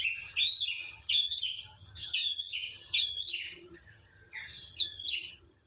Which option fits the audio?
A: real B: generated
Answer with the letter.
B